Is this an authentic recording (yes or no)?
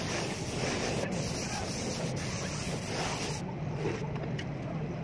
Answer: yes